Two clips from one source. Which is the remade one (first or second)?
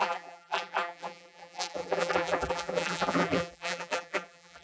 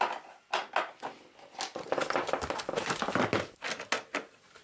first